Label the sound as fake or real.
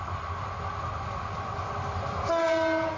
real